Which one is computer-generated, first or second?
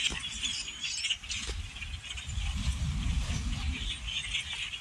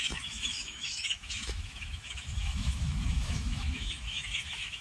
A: second